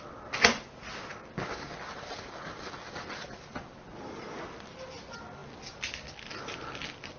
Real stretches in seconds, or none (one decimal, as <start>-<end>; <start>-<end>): 0.0-7.2